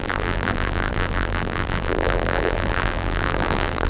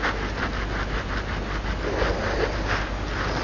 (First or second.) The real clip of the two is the second